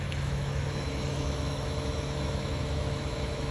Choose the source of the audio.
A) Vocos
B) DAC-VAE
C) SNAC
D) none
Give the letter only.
B